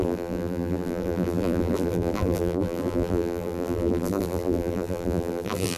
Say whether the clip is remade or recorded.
remade